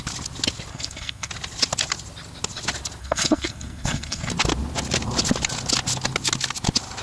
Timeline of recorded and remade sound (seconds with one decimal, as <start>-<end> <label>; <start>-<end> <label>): 0.0-0.7 recorded; 0.7-1.3 remade; 1.3-3.0 recorded; 3.0-4.3 remade; 4.3-7.0 recorded

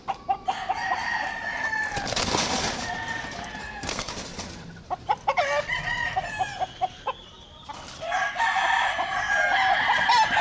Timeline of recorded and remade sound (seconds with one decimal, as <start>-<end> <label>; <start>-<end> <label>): 0.0-3.6 recorded; 3.6-4.1 remade; 4.1-10.4 recorded

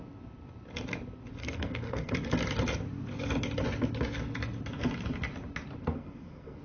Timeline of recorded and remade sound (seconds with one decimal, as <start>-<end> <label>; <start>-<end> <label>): 0.0-1.4 recorded; 1.4-2.1 remade; 2.1-5.8 recorded; 5.8-6.6 remade

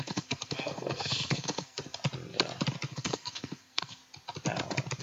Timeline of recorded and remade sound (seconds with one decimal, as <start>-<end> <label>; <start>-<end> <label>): 0.0-1.8 remade; 1.8-2.9 recorded; 2.9-4.0 remade; 4.0-5.0 recorded

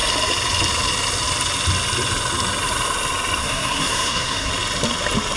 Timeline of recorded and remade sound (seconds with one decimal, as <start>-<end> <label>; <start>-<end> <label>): 0.0-3.4 recorded; 3.4-4.5 remade; 4.5-5.4 recorded

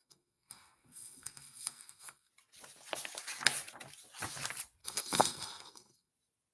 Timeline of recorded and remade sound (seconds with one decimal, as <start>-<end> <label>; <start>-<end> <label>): 0.0-2.3 remade; 2.3-4.8 recorded; 4.8-6.1 remade; 6.1-6.5 recorded

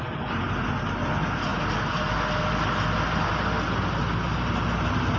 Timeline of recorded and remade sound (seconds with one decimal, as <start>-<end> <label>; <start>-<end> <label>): 0.0-5.2 recorded

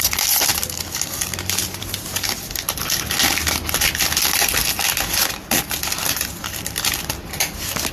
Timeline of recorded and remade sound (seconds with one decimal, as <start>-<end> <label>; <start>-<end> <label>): 0.0-7.9 recorded